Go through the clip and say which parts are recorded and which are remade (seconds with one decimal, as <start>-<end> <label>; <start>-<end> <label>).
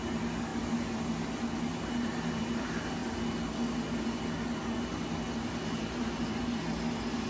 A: 0.0-7.3 recorded